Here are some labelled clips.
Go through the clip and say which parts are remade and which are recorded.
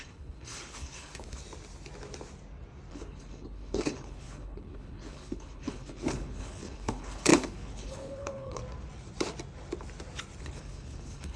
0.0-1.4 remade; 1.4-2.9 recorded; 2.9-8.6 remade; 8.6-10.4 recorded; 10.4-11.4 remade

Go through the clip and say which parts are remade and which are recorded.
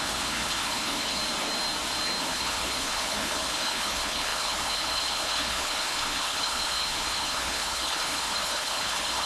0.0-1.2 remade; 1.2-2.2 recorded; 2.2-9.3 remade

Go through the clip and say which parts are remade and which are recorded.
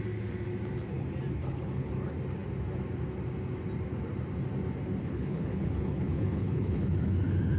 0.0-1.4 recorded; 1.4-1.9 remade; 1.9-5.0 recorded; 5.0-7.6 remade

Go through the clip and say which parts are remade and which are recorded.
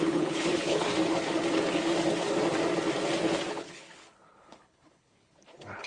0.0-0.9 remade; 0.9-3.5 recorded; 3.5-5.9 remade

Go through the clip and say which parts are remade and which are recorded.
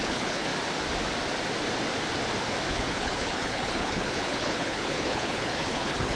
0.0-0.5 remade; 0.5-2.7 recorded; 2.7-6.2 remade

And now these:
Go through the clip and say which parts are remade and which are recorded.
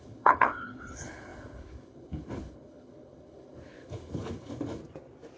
0.0-4.8 remade; 4.8-5.4 recorded